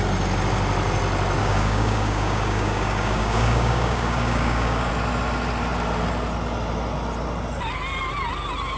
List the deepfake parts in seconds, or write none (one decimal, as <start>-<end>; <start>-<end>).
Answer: 1.4-4.9